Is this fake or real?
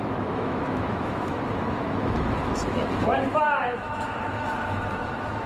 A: fake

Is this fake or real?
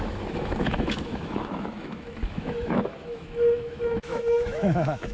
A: fake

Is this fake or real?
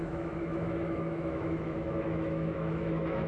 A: fake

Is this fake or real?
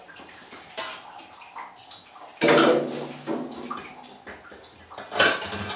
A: real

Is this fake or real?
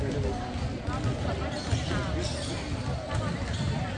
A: real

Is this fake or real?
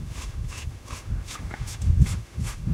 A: fake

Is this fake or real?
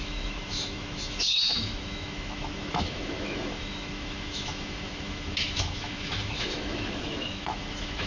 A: fake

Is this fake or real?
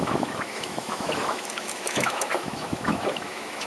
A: fake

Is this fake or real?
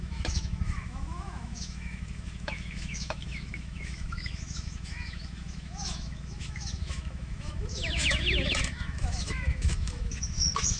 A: fake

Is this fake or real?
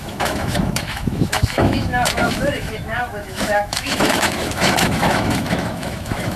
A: fake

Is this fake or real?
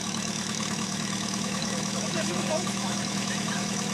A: fake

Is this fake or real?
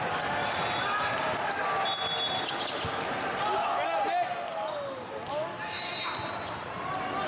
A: real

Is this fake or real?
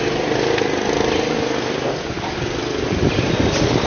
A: real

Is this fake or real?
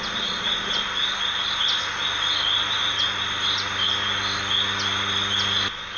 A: real